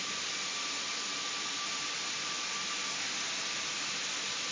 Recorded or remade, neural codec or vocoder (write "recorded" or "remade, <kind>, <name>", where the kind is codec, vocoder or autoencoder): recorded